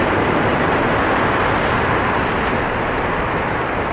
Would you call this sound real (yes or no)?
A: no